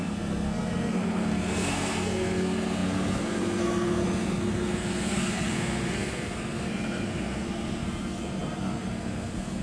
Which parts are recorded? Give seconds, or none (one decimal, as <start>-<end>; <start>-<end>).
none